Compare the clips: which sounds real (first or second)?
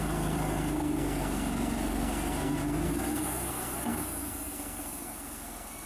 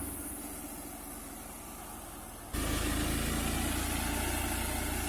second